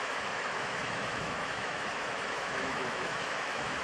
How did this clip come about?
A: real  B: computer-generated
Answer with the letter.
B